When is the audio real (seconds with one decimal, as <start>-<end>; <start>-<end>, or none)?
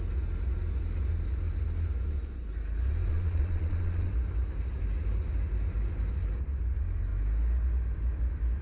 0.0-3.1; 4.1-8.6